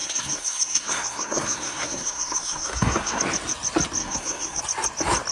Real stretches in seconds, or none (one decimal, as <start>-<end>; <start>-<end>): 3.2-4.0; 4.6-5.3